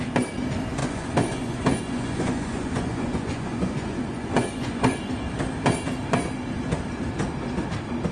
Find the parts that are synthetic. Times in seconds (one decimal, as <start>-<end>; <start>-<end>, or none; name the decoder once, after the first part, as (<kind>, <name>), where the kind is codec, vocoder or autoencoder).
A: 0.8-5.1 (vocoder, Vocos)